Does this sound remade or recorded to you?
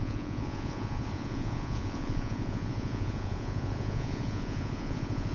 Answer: remade